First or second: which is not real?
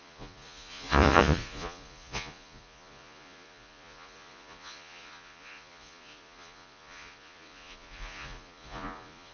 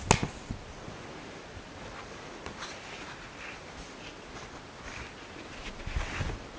first